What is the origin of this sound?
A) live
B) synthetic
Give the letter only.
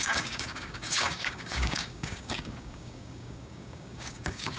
B